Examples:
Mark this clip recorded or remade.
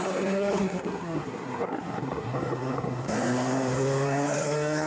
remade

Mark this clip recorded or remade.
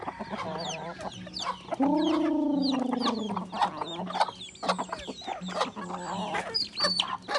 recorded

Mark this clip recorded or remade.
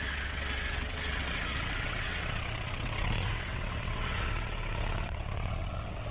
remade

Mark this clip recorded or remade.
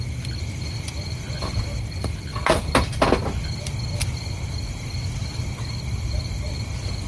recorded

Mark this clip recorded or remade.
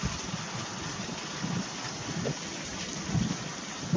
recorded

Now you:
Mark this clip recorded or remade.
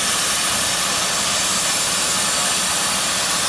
recorded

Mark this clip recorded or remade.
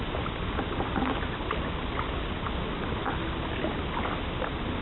recorded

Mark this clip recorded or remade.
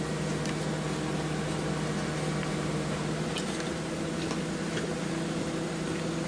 recorded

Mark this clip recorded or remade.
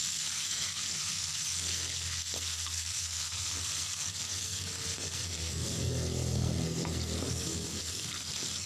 remade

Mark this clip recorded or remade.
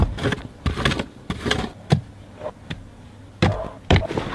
recorded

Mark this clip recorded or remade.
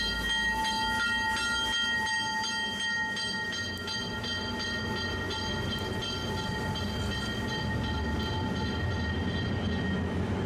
recorded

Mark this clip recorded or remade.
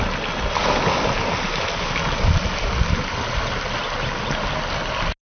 recorded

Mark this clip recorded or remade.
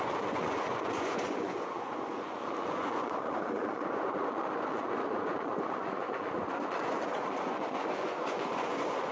remade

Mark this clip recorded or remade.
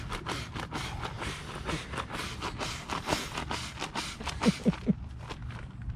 recorded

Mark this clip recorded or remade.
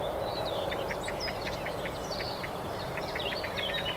remade